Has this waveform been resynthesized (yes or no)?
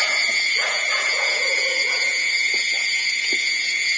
yes